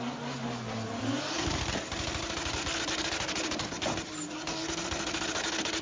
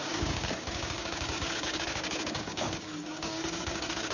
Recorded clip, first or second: first